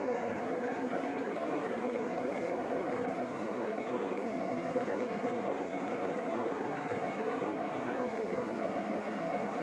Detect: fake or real fake